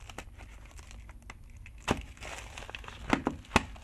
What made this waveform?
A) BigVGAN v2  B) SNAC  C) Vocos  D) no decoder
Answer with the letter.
D